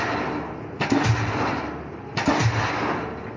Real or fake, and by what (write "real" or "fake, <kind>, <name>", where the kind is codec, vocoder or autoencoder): real